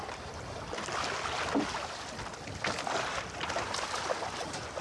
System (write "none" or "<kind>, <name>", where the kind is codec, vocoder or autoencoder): none